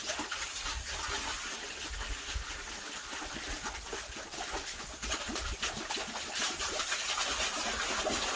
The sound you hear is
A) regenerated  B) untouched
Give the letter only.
B